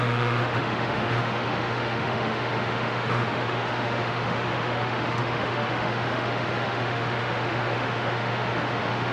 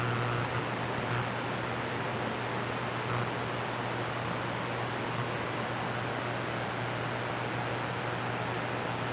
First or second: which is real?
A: second